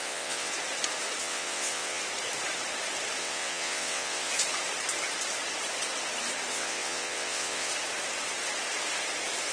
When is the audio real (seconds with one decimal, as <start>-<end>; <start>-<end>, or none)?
0.5-1.2; 2.0-3.2; 4.3-6.5; 7.7-9.5